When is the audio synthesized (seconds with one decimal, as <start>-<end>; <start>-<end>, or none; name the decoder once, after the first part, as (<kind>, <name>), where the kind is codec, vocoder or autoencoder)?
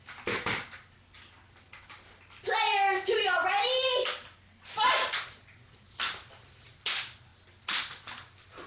none